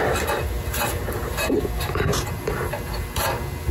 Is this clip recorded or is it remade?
recorded